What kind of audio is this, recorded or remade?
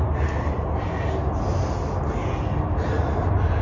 recorded